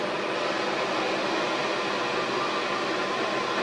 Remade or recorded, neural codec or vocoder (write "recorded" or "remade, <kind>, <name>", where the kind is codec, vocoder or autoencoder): recorded